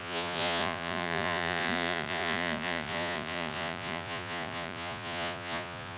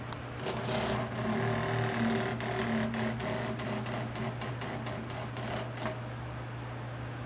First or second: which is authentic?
second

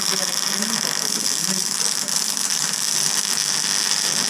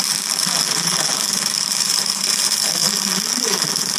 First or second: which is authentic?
first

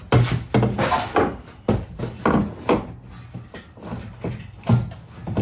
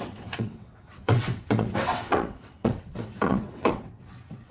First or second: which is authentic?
first